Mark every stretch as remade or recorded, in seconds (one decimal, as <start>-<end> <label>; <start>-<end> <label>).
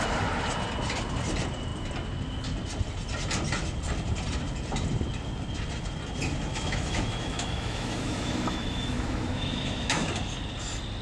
0.0-6.5 recorded; 6.5-10.1 remade; 10.1-11.0 recorded